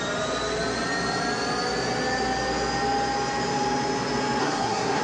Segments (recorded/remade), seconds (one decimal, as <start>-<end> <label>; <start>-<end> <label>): 0.0-4.4 recorded; 4.4-5.0 remade